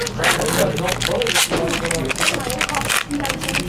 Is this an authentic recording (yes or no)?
yes